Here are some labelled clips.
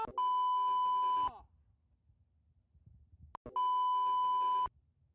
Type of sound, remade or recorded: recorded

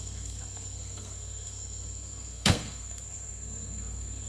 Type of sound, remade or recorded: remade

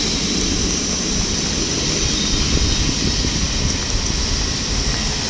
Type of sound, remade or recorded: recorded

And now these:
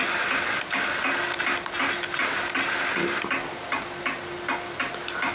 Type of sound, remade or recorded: recorded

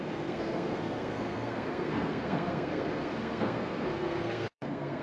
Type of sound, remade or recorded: remade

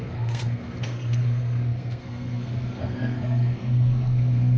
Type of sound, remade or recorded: remade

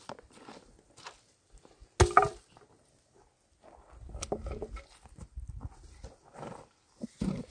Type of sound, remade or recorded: recorded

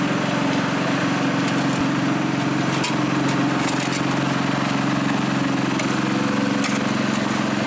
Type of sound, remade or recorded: recorded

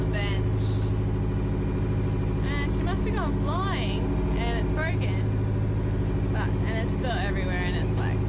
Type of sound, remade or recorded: recorded